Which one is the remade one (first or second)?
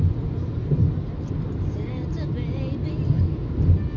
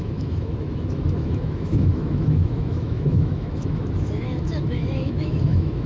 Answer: second